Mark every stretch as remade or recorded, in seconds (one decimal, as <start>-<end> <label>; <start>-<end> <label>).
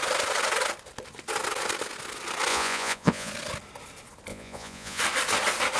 0.0-2.5 recorded; 2.5-3.3 remade; 3.3-4.3 recorded; 4.3-5.0 remade; 5.0-5.8 recorded